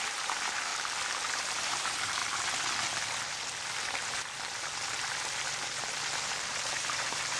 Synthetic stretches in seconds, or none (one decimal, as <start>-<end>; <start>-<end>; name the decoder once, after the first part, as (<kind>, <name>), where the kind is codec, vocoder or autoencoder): 0.0-0.7 (vocoder, BigVGAN v2); 1.6-2.2; 6.5-7.4